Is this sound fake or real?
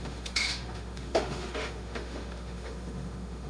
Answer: fake